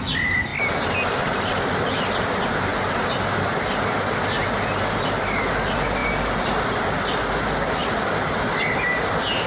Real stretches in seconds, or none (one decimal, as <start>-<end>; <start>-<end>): 0.0-6.0; 6.6-7.8